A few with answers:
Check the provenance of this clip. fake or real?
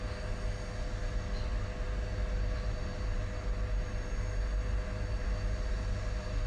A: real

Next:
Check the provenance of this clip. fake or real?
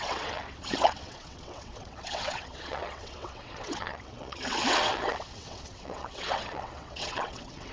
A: fake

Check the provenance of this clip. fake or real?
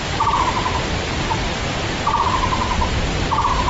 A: fake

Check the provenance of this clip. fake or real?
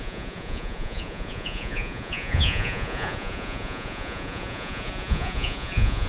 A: fake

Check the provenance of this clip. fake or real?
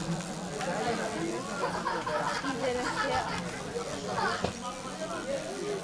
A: real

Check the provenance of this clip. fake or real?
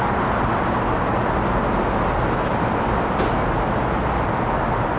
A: real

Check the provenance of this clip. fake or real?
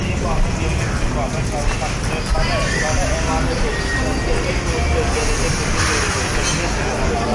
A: real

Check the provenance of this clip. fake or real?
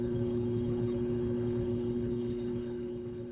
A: fake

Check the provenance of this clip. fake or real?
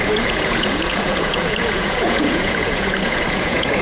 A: fake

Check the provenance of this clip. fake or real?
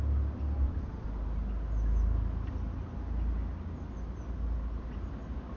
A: real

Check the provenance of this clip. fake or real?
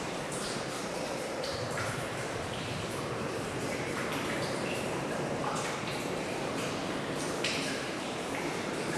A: fake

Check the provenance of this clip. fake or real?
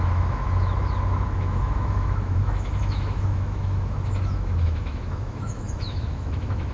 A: fake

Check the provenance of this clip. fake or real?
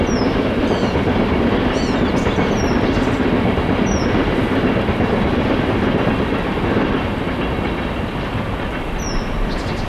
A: real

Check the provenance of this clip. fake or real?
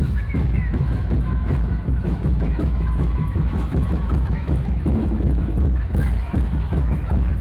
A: fake